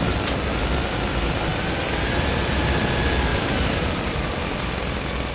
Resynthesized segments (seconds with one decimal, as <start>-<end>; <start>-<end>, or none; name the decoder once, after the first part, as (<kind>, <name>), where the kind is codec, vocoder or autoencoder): 3.3-3.9 (vocoder, BigVGAN v2)